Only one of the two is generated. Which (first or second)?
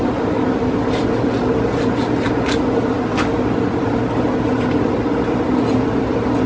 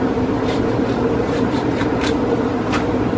second